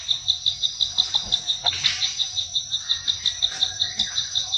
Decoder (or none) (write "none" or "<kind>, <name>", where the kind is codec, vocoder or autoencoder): none